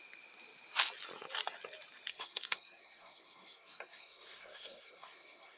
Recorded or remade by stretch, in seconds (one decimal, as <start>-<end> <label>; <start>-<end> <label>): 0.0-2.1 recorded; 2.1-5.6 remade